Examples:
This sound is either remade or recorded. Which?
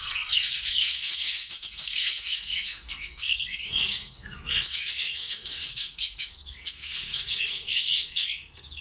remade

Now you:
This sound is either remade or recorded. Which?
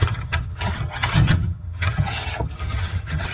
remade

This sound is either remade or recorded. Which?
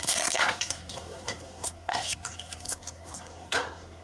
remade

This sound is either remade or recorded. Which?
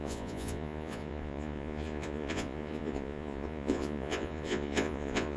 remade